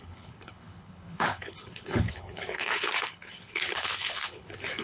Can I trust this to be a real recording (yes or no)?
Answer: no